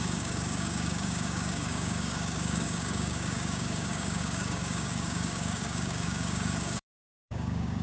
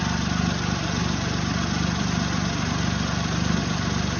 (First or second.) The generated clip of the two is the first